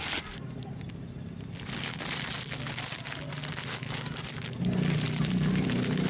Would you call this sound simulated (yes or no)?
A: no